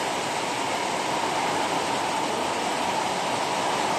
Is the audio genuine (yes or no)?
yes